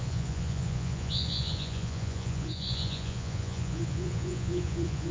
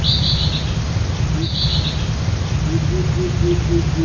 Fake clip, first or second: first